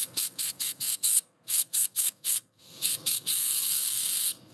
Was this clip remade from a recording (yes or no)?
yes